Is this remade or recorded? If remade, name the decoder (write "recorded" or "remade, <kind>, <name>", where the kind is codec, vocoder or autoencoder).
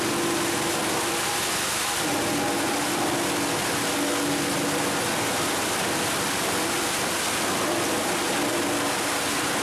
recorded